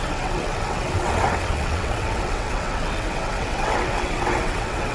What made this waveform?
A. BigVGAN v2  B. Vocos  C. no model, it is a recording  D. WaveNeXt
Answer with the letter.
D